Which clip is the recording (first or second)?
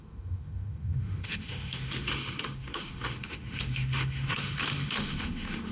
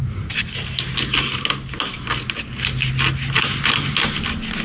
second